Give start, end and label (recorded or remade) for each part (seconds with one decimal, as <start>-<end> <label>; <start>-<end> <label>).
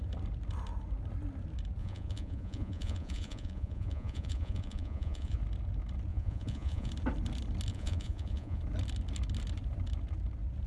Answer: 0.0-1.8 recorded; 1.8-5.4 remade; 5.4-6.1 recorded; 6.1-6.9 remade; 6.9-7.7 recorded; 7.7-8.6 remade; 8.6-10.7 recorded